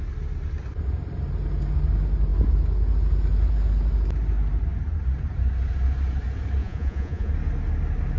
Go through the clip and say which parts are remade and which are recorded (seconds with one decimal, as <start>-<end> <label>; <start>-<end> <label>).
0.0-6.6 recorded; 6.6-7.3 remade; 7.3-8.2 recorded